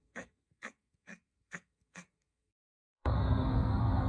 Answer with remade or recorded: remade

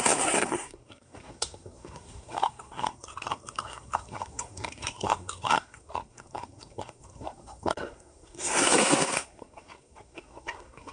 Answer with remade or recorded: remade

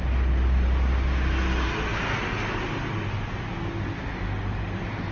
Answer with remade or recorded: recorded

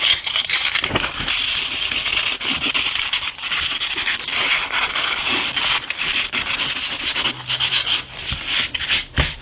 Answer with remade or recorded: recorded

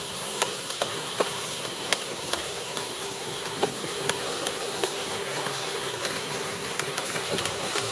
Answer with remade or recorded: remade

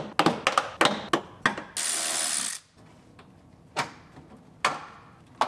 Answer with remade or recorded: recorded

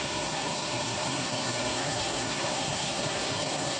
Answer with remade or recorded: remade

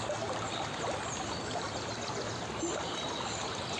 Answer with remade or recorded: recorded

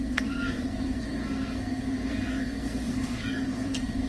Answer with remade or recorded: remade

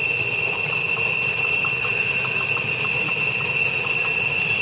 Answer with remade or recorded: recorded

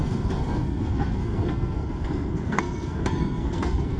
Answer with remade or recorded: remade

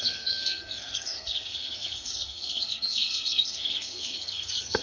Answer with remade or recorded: remade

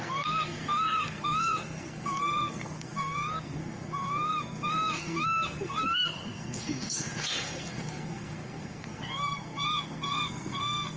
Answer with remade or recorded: remade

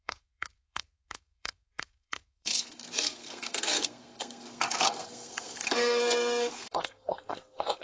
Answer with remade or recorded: remade